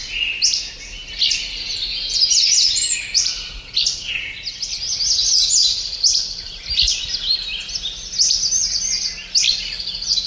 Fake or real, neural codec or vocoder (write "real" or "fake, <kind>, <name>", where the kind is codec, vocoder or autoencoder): real